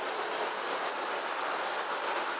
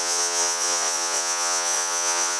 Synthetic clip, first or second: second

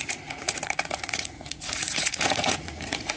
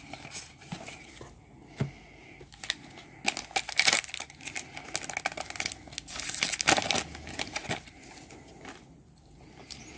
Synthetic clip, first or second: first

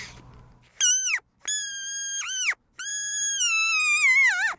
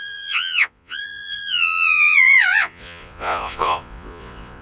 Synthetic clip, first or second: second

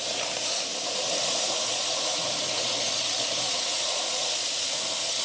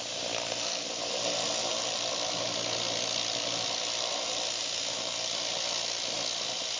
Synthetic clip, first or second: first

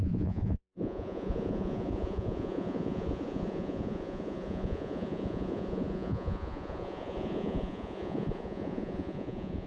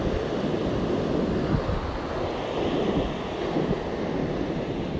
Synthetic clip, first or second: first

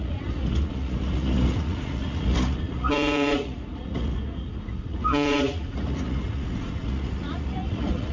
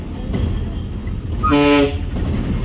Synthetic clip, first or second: first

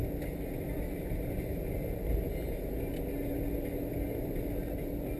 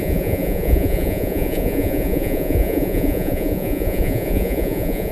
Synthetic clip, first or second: second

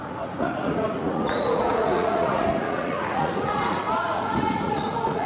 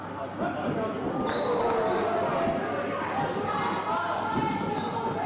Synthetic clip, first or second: first